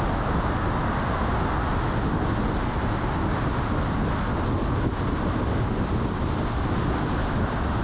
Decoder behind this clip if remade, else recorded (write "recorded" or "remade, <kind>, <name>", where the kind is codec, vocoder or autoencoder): recorded